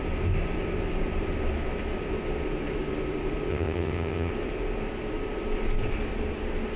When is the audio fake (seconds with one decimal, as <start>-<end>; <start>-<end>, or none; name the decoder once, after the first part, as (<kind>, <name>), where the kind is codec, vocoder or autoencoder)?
3.5-4.3 (vocoder, HiFi-GAN)